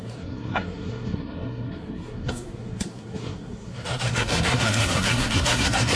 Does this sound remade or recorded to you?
remade